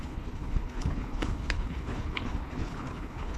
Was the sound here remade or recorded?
remade